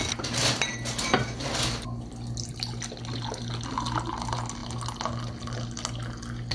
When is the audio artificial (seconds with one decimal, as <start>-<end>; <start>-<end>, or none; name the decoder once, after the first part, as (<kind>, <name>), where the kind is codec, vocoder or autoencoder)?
none